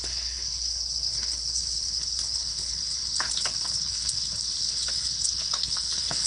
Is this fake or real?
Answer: fake